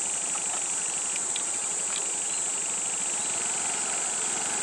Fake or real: real